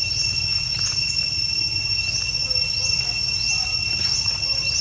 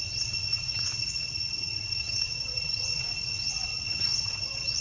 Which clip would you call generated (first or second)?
second